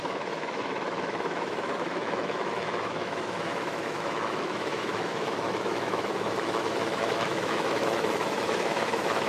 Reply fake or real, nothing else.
fake